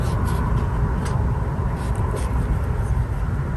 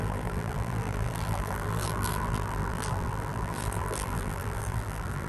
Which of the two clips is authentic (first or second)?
first